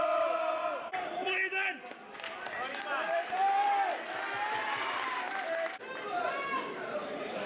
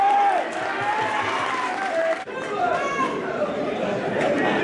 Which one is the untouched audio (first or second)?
first